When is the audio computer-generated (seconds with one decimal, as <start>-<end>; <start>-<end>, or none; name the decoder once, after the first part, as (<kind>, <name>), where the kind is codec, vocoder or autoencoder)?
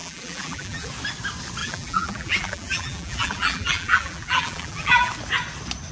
0.0-0.9 (vocoder, BigVGAN v2); 1.6-5.1